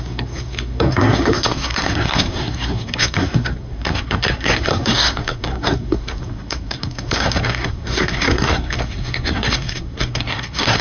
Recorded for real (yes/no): no